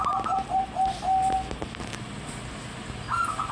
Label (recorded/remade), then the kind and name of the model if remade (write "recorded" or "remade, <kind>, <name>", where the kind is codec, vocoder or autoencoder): recorded